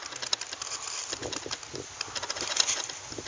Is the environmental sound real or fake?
real